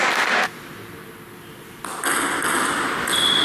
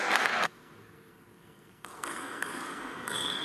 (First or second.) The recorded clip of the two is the first